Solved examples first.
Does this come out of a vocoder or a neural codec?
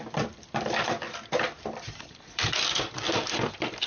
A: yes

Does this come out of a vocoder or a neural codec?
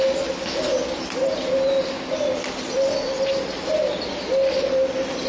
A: no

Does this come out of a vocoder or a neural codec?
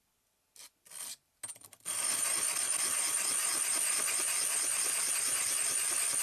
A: no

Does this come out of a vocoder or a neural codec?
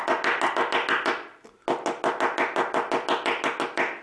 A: no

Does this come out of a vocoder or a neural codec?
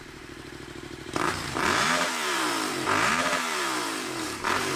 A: yes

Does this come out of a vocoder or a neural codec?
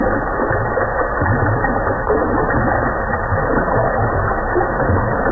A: yes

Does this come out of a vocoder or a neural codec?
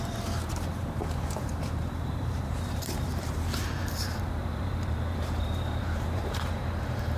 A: yes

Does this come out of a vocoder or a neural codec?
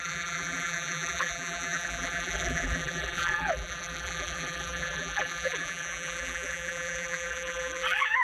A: yes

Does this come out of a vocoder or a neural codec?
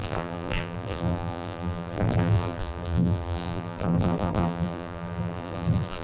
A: yes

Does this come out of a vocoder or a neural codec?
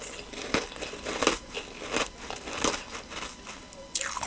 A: no